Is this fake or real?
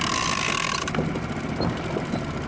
real